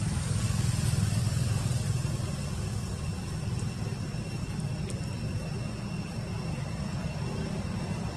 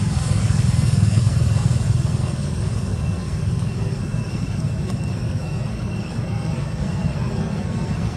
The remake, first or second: second